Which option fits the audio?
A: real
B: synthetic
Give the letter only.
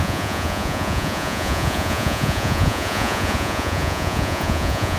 B